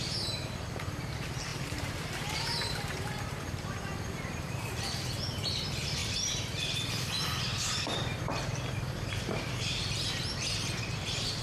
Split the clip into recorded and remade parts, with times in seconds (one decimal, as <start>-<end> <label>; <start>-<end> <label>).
0.0-11.4 remade

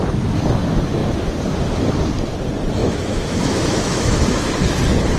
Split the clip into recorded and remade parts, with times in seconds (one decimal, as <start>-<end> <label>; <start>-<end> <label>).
0.0-2.8 recorded; 2.8-4.5 remade; 4.5-5.2 recorded

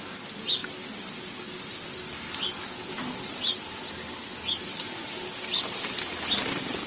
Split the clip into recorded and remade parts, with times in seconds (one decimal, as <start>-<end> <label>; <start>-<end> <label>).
0.0-6.9 recorded

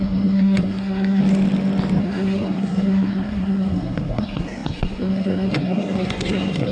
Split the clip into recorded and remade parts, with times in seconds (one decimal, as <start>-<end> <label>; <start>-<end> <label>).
0.0-1.2 remade; 1.2-2.0 recorded; 2.0-6.7 remade

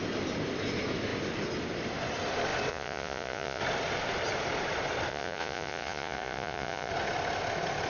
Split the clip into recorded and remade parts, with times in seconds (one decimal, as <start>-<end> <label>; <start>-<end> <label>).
0.0-2.7 recorded; 2.7-3.6 remade; 3.6-5.1 recorded; 5.1-6.9 remade; 6.9-7.9 recorded

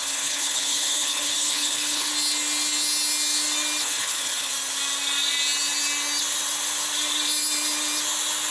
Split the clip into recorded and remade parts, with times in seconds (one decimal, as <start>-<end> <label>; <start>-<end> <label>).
0.0-2.1 remade; 2.1-3.8 recorded; 3.8-4.5 remade; 4.5-8.5 recorded

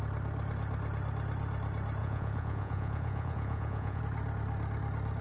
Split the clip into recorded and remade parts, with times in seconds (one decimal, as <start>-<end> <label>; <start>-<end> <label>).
0.0-2.0 recorded; 2.0-4.0 remade; 4.0-5.2 recorded